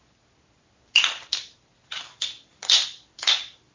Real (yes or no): yes